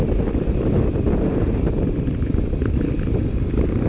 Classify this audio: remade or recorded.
recorded